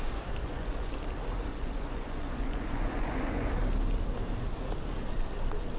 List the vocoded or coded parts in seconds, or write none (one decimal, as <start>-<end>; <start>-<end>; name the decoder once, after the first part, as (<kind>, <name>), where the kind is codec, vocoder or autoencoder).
0.4-0.9 (vocoder, Vocos); 1.5-3.5